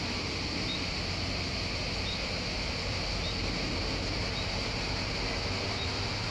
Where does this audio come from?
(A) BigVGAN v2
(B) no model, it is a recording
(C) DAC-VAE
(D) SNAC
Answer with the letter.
B